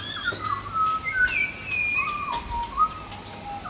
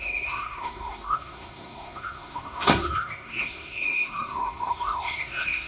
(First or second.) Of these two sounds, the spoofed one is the second